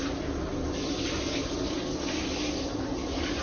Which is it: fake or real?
real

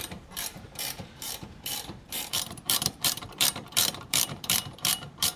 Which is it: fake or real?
fake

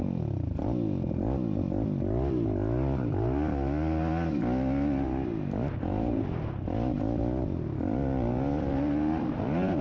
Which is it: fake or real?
real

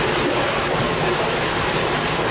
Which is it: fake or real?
real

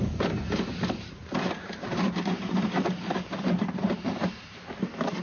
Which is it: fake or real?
fake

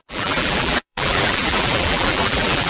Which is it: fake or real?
fake